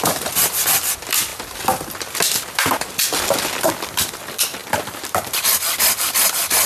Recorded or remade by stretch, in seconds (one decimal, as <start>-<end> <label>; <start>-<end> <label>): 0.0-6.7 recorded